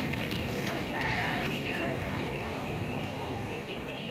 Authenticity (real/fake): fake